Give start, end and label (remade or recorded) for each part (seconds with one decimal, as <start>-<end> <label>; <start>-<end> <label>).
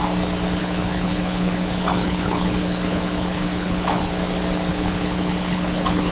0.0-0.6 recorded; 0.6-4.1 remade; 4.1-4.7 recorded; 4.7-6.1 remade